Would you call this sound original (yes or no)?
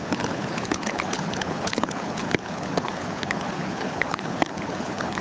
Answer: no